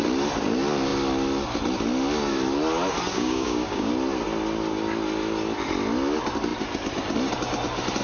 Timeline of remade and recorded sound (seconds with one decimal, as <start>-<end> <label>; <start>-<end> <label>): 0.0-3.1 recorded; 3.1-3.9 remade; 3.9-8.0 recorded